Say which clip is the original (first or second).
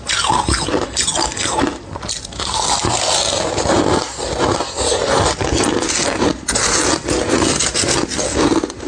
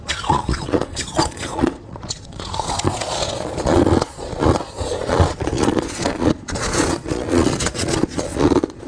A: first